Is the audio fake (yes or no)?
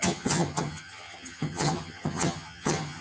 yes